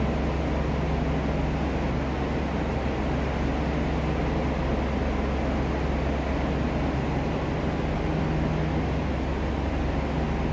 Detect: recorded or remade recorded